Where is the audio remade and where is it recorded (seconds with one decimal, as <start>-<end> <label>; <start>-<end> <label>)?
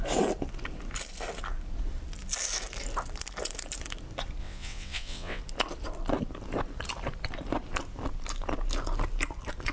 0.0-4.4 recorded; 4.4-5.4 remade; 5.4-9.7 recorded